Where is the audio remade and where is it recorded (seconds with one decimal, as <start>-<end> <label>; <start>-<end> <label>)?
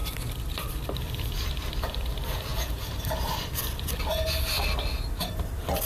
0.0-2.5 remade; 2.5-3.2 recorded; 3.2-4.1 remade; 4.1-5.2 recorded; 5.2-5.9 remade